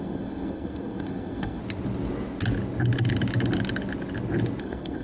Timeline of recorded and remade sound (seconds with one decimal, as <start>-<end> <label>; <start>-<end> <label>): 0.0-1.6 remade; 1.6-4.6 recorded; 4.6-5.0 remade